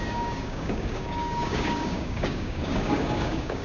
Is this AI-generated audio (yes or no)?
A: yes